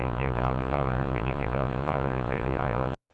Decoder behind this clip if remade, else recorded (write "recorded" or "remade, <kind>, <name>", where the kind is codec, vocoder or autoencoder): remade, vocoder, Vocos